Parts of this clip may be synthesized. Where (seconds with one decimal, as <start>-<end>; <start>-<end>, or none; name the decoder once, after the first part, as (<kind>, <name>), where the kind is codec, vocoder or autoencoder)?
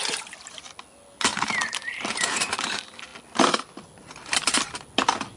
1.3-2.5 (vocoder, BigVGAN v2)